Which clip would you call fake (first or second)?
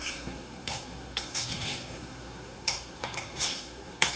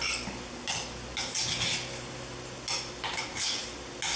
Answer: first